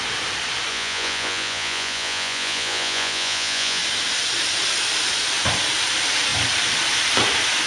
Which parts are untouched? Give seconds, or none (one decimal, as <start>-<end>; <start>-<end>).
0.0-0.7; 3.8-7.7

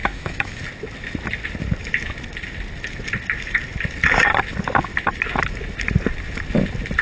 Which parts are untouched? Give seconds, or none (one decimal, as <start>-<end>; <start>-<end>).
0.6-7.0